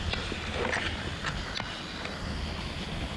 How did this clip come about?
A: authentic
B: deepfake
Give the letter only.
A